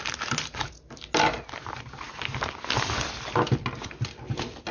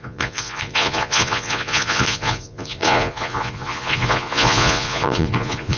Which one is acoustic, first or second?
first